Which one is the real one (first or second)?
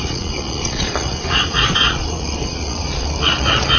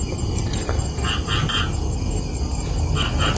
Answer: second